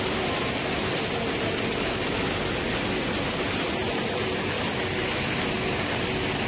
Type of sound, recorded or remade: recorded